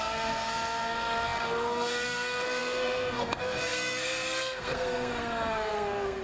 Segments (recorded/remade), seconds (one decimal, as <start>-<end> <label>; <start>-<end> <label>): 0.0-6.2 remade